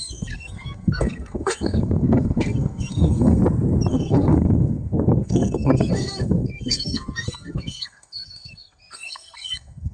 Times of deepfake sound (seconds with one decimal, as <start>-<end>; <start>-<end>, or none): 0.0-3.4; 3.9-9.9